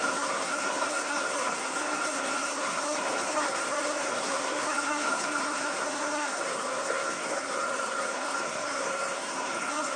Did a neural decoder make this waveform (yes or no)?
yes